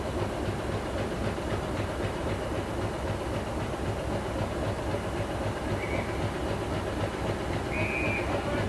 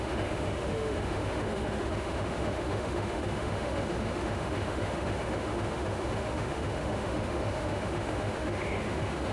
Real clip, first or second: first